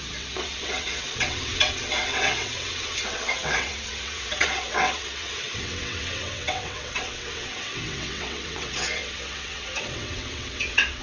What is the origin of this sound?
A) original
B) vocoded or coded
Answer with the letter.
B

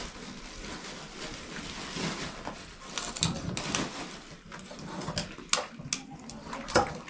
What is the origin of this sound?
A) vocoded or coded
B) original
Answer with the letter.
B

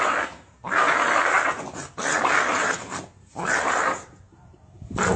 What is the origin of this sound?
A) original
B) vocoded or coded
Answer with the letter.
A